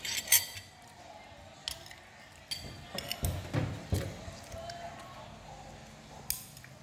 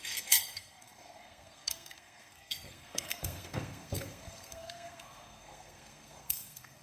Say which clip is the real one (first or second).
first